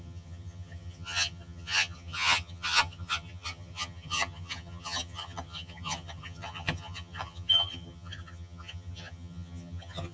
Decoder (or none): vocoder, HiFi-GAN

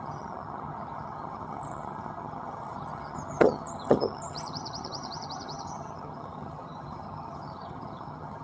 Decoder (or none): vocoder, HiFi-GAN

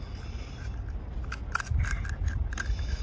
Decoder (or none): none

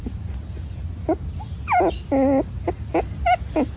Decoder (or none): none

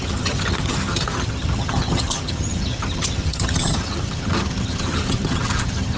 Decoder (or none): vocoder, HiFi-GAN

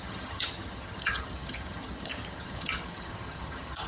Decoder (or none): vocoder, HiFi-GAN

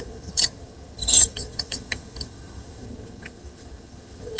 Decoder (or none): vocoder, HiFi-GAN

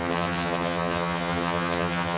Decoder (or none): vocoder, HiFi-GAN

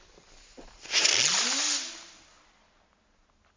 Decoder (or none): none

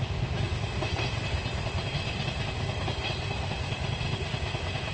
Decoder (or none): none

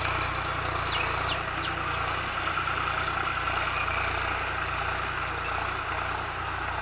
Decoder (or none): none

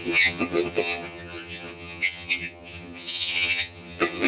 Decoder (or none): vocoder, HiFi-GAN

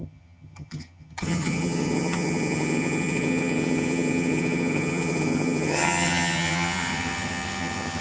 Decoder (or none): vocoder, HiFi-GAN